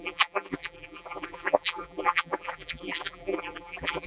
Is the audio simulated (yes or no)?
yes